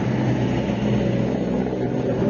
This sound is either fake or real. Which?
real